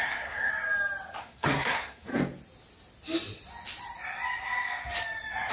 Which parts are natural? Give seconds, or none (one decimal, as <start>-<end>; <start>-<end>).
0.5-1.2; 2.1-5.5